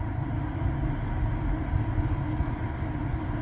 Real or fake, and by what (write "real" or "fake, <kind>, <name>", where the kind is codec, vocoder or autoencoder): real